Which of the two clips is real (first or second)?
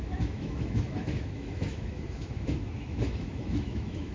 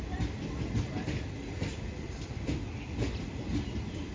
second